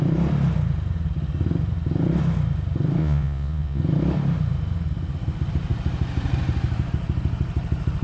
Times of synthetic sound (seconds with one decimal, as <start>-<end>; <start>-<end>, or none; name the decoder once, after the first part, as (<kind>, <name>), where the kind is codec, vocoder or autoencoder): 3.0-3.8 (vocoder, Vocos)